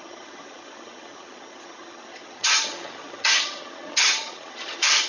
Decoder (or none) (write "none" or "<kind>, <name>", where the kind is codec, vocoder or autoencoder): vocoder, HiFi-GAN